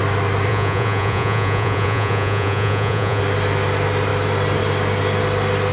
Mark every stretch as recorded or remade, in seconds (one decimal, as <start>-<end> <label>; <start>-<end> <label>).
0.0-0.5 recorded; 0.5-3.2 remade; 3.2-5.7 recorded